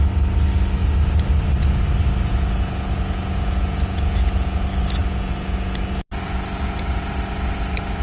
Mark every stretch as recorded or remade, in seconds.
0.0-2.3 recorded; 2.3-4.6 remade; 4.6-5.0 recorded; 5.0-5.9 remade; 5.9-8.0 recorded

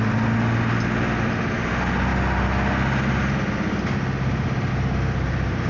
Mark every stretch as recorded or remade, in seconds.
0.0-5.7 recorded

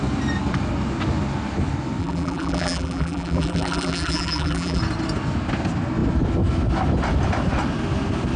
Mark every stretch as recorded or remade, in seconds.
0.0-2.0 recorded; 2.0-4.8 remade; 4.8-8.4 recorded

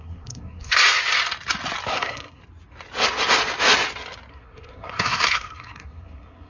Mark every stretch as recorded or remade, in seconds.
0.0-0.8 remade; 0.8-1.9 recorded; 1.9-2.4 remade; 2.4-4.3 recorded; 4.3-6.5 remade

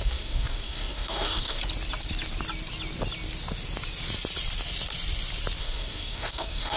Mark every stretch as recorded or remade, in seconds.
0.0-1.6 remade; 1.6-5.6 recorded; 5.6-6.8 remade

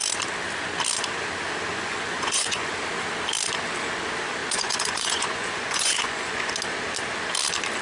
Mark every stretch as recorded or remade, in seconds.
0.0-1.7 recorded; 1.7-2.7 remade; 2.7-4.4 recorded; 4.4-6.5 remade; 6.5-7.8 recorded